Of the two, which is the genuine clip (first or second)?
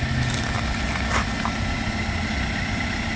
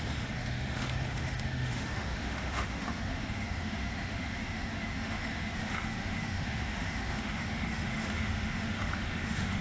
first